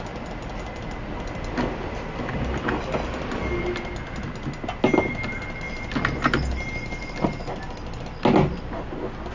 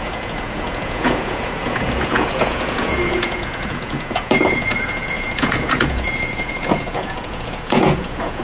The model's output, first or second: second